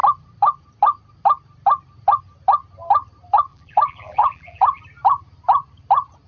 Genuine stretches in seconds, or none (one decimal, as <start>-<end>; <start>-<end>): 0.0-3.5; 4.8-6.3